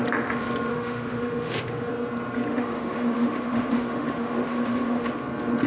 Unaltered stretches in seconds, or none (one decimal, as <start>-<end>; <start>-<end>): 0.0-0.7; 1.9-2.5; 5.1-5.7